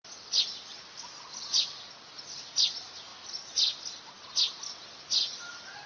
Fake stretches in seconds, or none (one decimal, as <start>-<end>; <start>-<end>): none